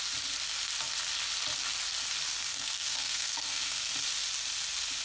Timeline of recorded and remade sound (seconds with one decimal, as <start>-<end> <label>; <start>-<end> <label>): 0.0-2.5 recorded; 2.5-3.9 remade; 3.9-5.0 recorded